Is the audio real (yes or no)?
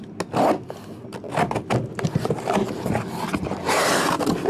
yes